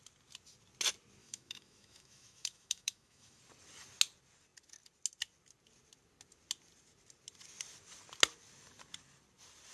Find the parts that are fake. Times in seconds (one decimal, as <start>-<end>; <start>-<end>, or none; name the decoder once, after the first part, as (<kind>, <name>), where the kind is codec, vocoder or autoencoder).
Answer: 1.2-3.4 (autoencoder, DAC-VAE)